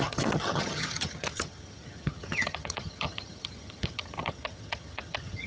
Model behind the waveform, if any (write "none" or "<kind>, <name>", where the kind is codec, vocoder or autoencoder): vocoder, HiFi-GAN